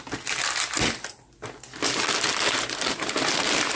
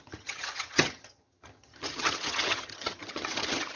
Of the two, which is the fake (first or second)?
second